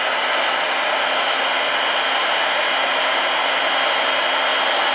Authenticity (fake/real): real